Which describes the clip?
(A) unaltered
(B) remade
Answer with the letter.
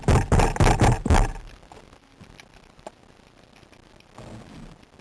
A